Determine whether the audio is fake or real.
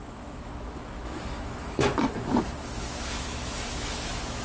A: fake